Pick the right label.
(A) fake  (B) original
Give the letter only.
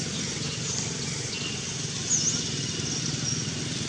B